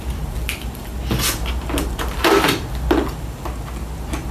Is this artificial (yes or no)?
no